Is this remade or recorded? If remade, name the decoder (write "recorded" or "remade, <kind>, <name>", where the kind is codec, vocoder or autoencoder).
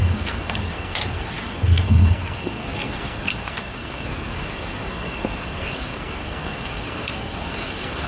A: remade, codec, SNAC